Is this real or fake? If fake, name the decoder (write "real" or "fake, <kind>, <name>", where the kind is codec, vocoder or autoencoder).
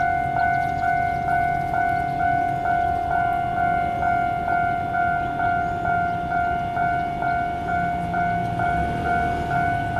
real